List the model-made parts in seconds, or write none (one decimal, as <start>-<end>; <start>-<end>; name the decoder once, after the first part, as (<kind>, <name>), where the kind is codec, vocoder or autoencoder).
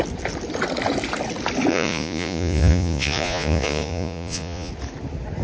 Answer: 1.7-4.7 (vocoder, Vocos)